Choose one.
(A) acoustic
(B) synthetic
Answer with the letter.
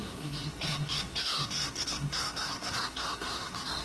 B